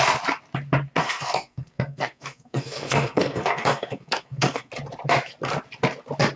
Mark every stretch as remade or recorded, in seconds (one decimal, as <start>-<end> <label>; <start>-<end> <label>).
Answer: 0.0-1.0 recorded; 1.0-4.7 remade; 4.7-6.4 recorded